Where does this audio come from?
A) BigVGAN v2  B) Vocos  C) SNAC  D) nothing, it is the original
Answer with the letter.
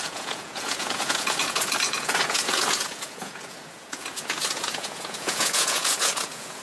B